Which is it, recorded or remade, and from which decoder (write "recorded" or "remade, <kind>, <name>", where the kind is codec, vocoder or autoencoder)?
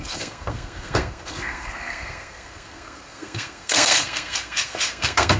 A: remade, codec, SNAC